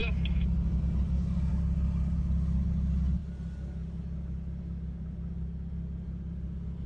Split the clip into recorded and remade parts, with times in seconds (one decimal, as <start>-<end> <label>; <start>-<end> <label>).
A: 0.0-6.9 recorded